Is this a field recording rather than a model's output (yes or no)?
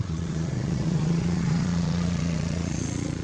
no